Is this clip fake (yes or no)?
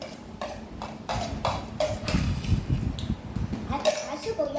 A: yes